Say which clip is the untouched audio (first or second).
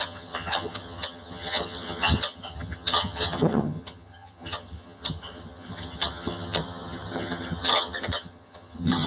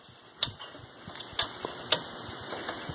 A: second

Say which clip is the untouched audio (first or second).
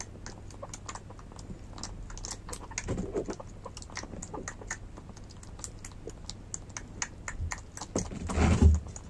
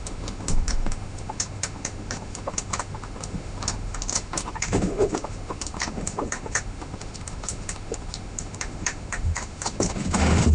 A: first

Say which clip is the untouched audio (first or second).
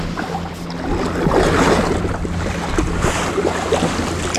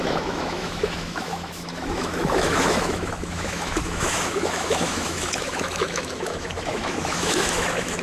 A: first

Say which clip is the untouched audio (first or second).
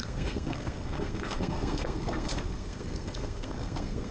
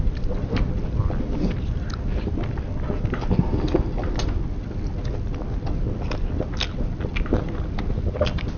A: second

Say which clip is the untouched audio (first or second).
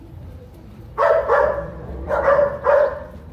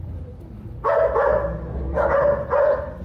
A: second